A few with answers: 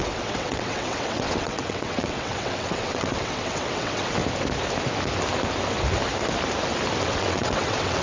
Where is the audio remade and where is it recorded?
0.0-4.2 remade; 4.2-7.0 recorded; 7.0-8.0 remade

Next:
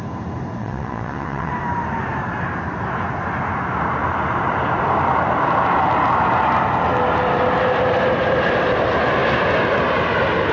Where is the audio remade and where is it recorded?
0.0-0.6 recorded; 0.6-1.5 remade; 1.5-10.5 recorded

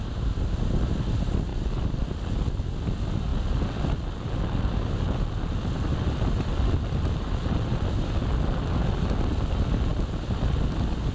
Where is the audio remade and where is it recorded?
0.0-11.1 recorded

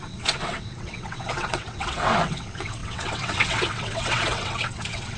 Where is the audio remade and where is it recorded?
0.0-5.2 remade